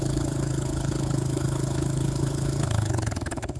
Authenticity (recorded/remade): remade